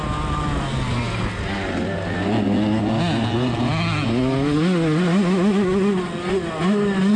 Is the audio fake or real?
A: real